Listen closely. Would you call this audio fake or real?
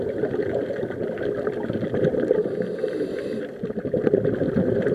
real